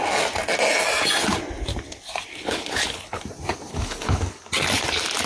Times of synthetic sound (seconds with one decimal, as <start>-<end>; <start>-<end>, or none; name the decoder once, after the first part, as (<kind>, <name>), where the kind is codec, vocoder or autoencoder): 2.3-3.2 (codec, HILCodec); 3.7-4.4